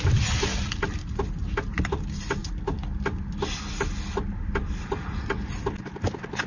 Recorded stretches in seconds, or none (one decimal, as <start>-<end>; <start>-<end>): 0.0-0.5; 1.8-6.5